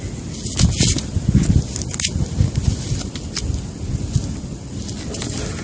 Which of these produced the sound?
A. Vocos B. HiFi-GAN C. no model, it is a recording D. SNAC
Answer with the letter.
C